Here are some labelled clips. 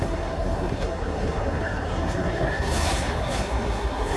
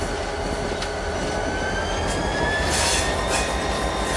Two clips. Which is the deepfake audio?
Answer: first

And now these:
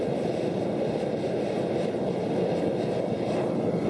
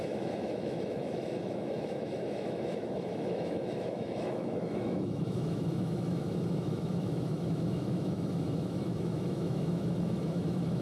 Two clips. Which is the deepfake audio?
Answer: second